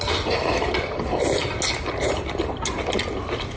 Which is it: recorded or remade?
recorded